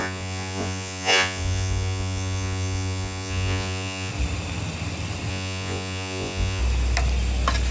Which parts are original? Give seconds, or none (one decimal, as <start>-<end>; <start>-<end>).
4.1-5.3; 6.6-7.7